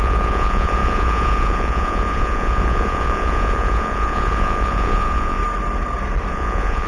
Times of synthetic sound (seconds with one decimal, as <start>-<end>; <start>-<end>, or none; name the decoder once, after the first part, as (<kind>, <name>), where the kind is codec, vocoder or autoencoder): 0.0-5.4 (vocoder, Vocos); 6.3-6.9